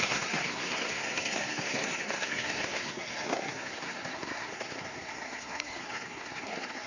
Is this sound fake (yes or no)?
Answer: yes